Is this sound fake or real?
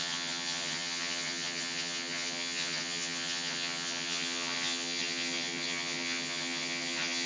fake